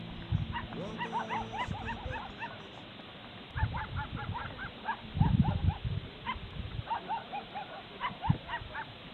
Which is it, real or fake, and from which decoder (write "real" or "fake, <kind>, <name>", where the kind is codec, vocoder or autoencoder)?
real